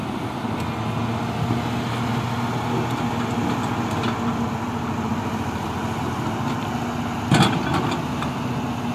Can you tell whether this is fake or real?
real